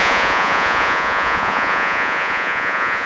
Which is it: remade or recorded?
remade